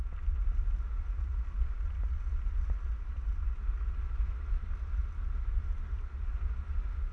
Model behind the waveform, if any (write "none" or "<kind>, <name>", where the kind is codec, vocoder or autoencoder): none